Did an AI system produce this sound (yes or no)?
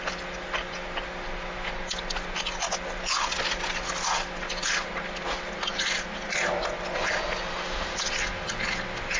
no